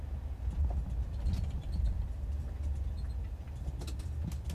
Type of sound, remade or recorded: recorded